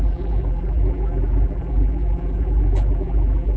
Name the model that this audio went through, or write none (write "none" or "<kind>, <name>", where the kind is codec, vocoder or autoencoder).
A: vocoder, BigVGAN v2